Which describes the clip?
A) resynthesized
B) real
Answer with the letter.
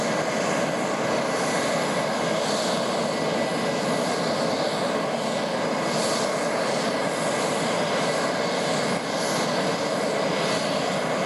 B